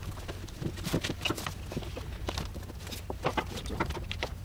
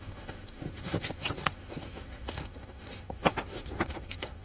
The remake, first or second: second